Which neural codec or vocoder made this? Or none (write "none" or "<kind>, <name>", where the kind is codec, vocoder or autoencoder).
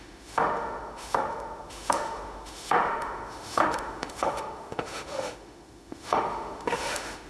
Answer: autoencoder, DAC-VAE